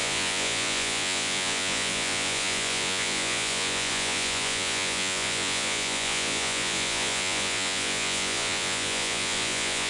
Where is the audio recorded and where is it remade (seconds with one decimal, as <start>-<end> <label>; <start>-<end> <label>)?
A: 0.0-9.9 remade